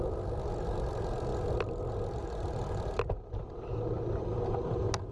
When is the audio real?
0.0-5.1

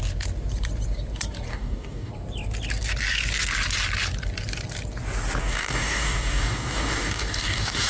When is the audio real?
0.0-1.5; 2.1-5.4

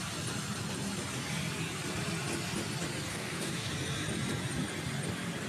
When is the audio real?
0.0-3.1; 3.7-5.5

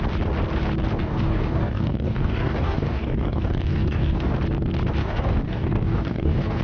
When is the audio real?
0.0-1.0; 4.3-5.0

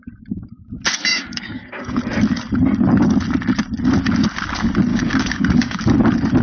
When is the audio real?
0.0-1.1; 2.0-4.9; 5.8-6.4

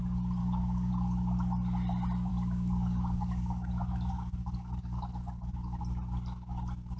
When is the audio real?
0.0-0.4; 0.9-2.3; 5.8-7.0

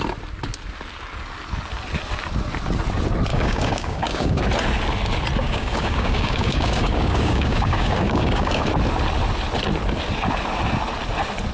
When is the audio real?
0.0-3.3; 4.4-5.4; 8.7-11.5

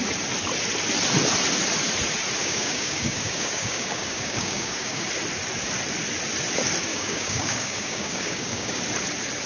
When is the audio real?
0.0-2.4; 5.1-6.9; 8.8-9.5